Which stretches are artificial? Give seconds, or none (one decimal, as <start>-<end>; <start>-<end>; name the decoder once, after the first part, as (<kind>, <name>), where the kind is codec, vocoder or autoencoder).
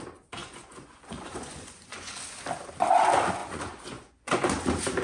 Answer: 0.4-2.1 (vocoder, Vocos); 3.4-4.5